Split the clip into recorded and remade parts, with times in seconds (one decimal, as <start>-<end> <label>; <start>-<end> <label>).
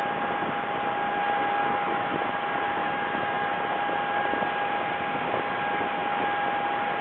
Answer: 0.0-1.6 recorded; 1.6-2.2 remade; 2.2-2.8 recorded; 2.8-3.7 remade; 3.7-7.0 recorded